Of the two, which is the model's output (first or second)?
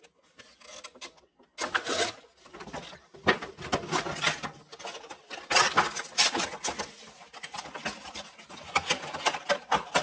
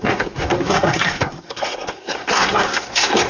second